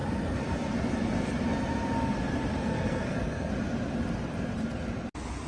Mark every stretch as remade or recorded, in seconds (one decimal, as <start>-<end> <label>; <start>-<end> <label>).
0.0-2.6 recorded; 2.6-3.5 remade; 3.5-5.5 recorded